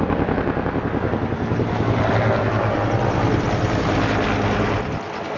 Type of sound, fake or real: real